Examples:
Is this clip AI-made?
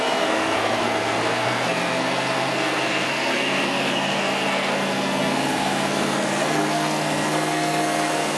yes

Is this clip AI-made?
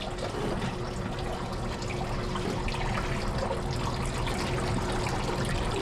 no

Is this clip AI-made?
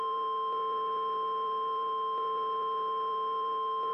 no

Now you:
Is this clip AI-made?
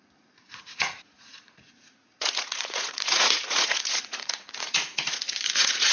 yes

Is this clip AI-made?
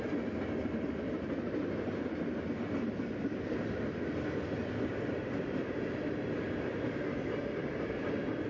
no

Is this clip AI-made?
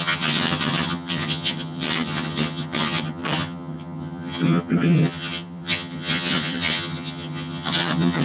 yes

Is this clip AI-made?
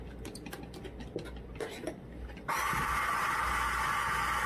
no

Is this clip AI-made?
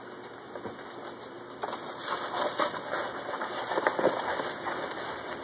no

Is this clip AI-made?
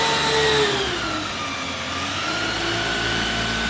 no